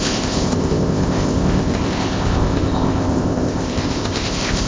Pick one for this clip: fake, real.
fake